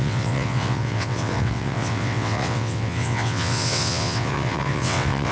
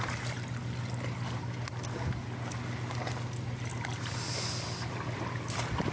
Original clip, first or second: second